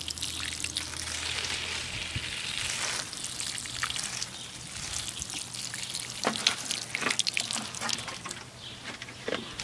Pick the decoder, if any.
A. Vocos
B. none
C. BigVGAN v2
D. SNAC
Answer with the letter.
B